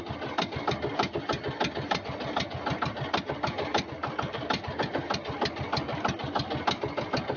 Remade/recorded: recorded